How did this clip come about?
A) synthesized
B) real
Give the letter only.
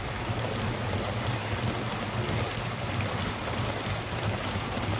B